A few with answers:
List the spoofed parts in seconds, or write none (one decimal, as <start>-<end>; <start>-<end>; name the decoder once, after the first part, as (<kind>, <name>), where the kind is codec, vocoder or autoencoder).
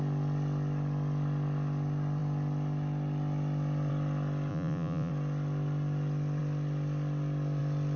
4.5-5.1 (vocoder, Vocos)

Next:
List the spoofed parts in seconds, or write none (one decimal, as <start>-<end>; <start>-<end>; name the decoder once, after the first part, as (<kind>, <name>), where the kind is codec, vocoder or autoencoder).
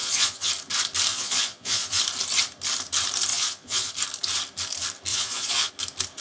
0.0-0.5 (vocoder, Vocos); 1.1-2.0; 3.3-3.9; 5.1-5.7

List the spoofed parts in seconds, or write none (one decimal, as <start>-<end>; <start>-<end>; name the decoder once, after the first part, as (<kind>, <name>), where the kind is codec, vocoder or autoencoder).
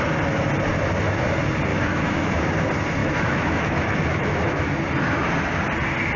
1.7-2.4 (autoencoder, DAC-VAE); 3.0-4.7